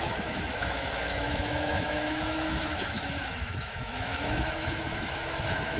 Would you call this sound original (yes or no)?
no